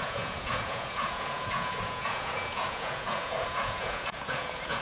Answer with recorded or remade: remade